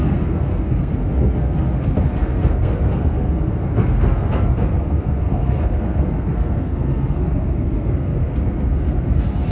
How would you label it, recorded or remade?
remade